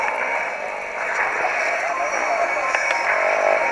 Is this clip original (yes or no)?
yes